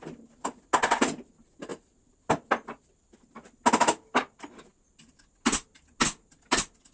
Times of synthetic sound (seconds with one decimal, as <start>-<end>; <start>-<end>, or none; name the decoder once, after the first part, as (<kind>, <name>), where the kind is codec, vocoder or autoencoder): none

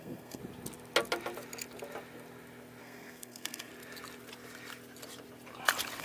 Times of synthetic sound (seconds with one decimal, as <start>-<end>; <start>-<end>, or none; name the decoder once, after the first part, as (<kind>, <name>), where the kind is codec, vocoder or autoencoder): 0.0-0.4 (codec, SNAC); 2.8-3.7

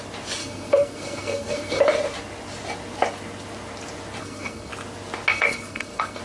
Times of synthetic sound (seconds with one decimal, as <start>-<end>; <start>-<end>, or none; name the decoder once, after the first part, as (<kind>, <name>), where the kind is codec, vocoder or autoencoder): 0.4-1.8 (codec, SNAC); 4.2-4.7; 5.3-6.2

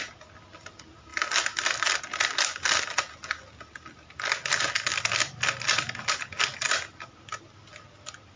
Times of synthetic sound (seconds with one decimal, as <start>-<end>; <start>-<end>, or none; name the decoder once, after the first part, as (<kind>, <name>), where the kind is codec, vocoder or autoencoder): none

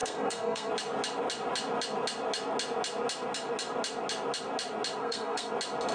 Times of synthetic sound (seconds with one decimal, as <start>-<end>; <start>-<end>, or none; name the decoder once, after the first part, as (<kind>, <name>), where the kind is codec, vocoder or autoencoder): 0.0-0.7 (codec, SNAC); 5.0-5.5

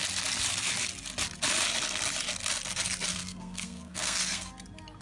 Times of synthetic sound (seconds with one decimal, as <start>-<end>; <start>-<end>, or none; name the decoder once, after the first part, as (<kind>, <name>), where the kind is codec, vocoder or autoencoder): 3.1-4.5 (codec, SNAC)

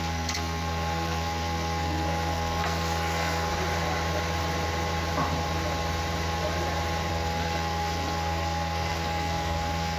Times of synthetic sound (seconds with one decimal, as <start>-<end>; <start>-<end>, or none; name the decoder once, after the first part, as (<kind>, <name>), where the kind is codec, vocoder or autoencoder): 0.0-3.5 (codec, SNAC); 7.1-10.0